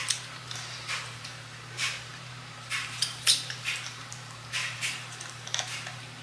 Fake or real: fake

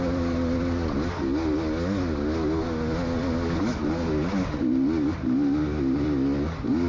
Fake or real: real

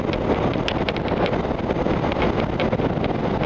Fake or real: real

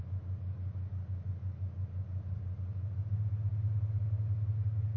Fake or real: real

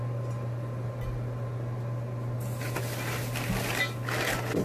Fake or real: real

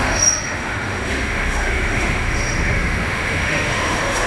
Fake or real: fake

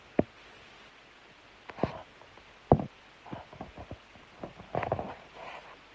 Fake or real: real